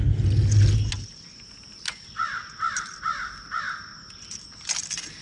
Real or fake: real